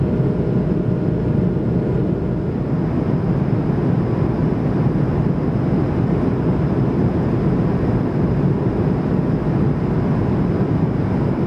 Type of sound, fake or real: real